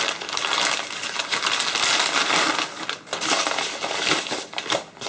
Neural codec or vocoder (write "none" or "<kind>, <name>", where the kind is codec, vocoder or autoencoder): none